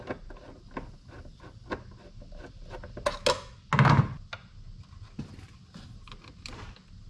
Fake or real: real